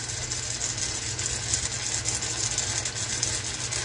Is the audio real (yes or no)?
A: yes